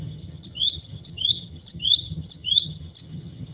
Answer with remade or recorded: remade